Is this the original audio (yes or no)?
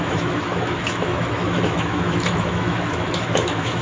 no